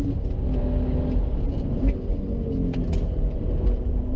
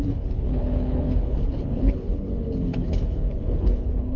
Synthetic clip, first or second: second